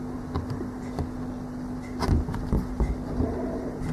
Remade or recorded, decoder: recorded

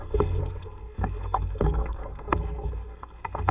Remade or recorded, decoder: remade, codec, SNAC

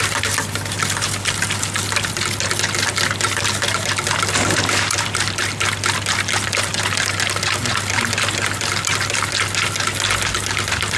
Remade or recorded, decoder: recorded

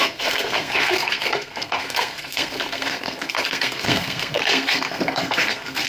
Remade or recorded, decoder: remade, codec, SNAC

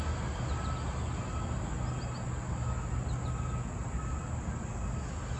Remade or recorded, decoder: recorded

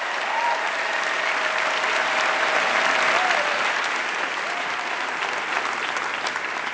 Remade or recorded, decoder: recorded